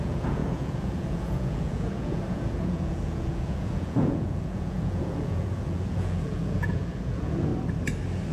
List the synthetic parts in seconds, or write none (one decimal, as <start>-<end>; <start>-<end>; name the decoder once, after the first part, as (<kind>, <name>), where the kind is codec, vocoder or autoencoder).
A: 0.0-7.5 (vocoder, Vocos)